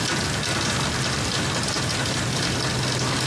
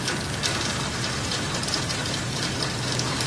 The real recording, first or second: first